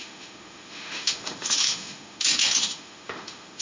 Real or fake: fake